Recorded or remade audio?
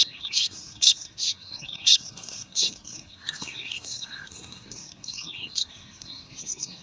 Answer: remade